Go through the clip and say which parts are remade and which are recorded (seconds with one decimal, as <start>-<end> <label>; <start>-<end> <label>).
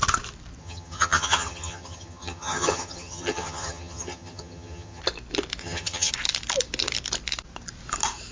0.0-0.6 recorded; 0.6-5.0 remade; 5.0-5.6 recorded; 5.6-6.1 remade; 6.1-8.3 recorded